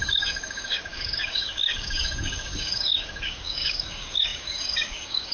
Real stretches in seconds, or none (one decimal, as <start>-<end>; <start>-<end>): none